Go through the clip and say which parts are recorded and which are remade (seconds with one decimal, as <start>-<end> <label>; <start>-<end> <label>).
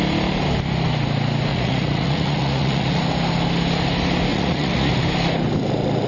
0.0-1.5 recorded; 1.5-3.0 remade; 3.0-4.3 recorded; 4.3-4.9 remade; 4.9-6.1 recorded